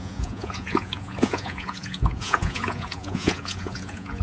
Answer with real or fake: fake